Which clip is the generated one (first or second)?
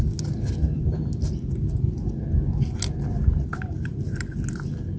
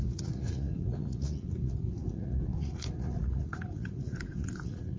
second